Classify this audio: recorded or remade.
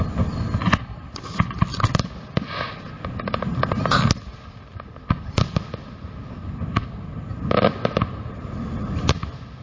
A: recorded